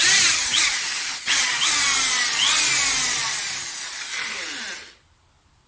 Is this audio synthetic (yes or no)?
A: no